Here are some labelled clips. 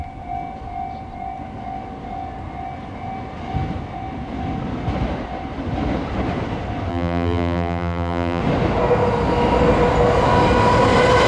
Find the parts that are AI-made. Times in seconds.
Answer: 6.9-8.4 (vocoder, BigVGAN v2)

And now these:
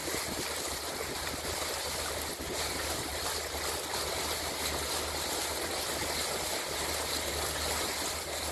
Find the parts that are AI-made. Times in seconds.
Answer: 0.0-3.1 (vocoder, BigVGAN v2); 3.9-6.5; 7.3-8.5

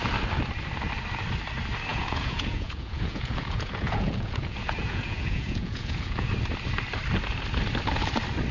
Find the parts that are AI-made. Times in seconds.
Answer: 1.9-6.3 (vocoder, Vocos)